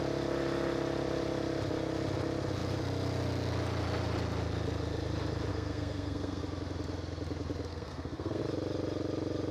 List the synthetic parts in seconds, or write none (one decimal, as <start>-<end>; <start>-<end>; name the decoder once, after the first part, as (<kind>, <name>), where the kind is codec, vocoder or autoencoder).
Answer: 5.5-6.4 (codec, SNAC); 7.7-8.4